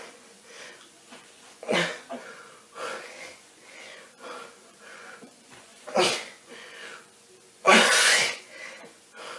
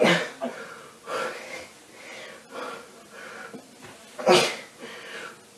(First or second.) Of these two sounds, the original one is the second